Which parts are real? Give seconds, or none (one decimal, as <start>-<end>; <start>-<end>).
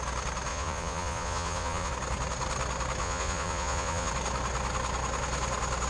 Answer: 0.0-0.5; 1.9-3.0; 4.1-5.9